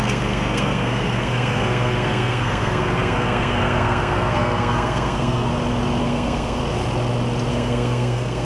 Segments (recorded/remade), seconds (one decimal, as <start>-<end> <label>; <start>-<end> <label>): 0.0-5.5 remade; 5.5-6.0 recorded; 6.0-6.6 remade; 6.6-7.5 recorded; 7.5-8.4 remade